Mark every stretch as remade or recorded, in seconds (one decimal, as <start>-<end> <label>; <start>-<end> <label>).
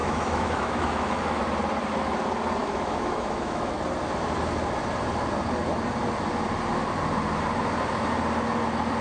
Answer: 0.0-1.4 remade; 1.4-2.6 recorded; 2.6-3.8 remade; 3.8-9.0 recorded